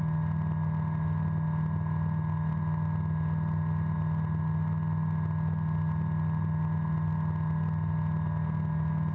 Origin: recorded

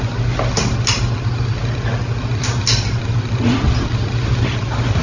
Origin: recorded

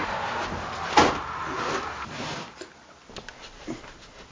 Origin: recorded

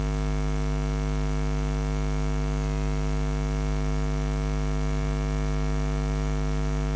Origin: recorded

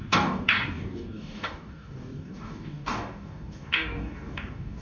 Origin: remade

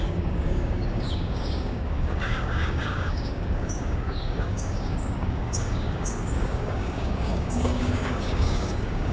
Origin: remade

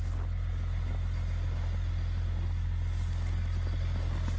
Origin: recorded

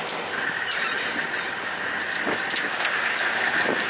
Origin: recorded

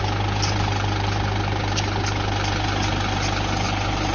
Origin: recorded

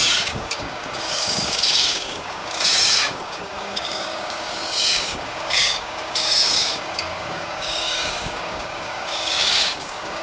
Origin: remade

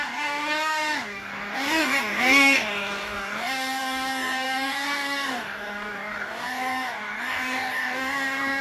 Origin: remade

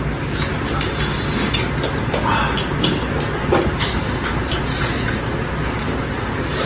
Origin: recorded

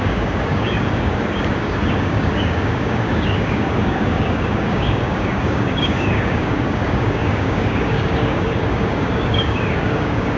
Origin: remade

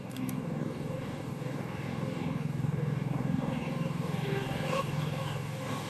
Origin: remade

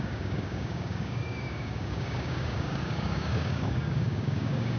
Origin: remade